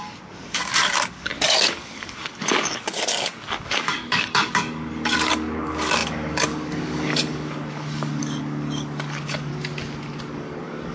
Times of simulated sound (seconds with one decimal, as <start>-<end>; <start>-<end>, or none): 0.0-9.5; 10.2-10.9